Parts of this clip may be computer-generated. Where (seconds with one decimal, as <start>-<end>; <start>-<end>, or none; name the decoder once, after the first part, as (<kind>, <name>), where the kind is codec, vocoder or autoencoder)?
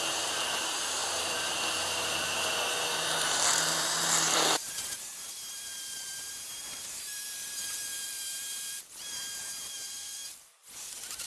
0.0-10.2 (vocoder, BigVGAN v2)